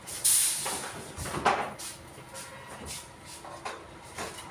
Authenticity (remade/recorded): recorded